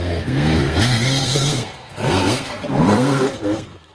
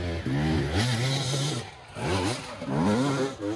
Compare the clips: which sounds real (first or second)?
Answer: second